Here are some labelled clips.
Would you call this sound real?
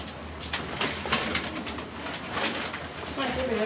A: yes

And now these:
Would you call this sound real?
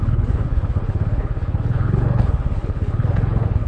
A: no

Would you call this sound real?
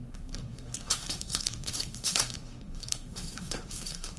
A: no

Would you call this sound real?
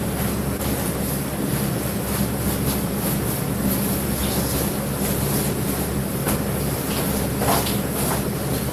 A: yes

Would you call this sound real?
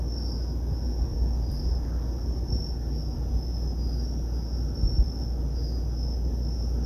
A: yes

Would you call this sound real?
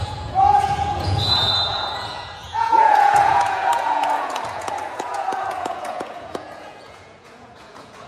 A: no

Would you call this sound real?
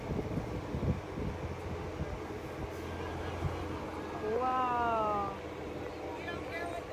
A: yes